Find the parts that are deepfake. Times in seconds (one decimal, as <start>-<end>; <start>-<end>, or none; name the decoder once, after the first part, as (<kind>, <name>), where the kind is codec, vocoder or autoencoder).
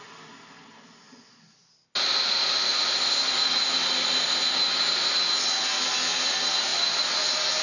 2.7-3.5 (vocoder, BigVGAN v2); 6.7-7.6